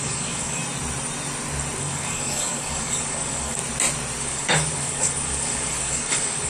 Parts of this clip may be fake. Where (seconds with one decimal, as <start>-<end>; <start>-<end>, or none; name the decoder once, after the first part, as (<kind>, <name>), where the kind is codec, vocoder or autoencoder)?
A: 0.0-0.6 (codec, DAC); 1.8-3.6; 4.2-6.5